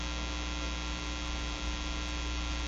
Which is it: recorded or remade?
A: recorded